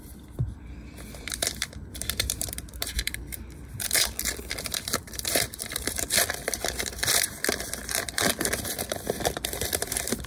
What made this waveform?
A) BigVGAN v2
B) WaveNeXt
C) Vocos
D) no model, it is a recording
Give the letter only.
A